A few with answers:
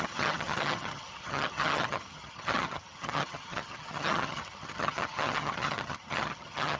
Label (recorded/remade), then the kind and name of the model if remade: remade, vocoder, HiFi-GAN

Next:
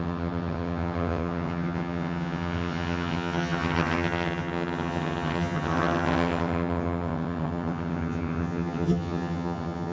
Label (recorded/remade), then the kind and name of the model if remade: remade, vocoder, HiFi-GAN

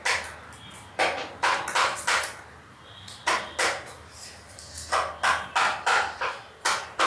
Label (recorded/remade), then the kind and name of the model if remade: recorded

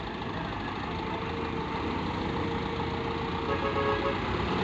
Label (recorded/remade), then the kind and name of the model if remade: recorded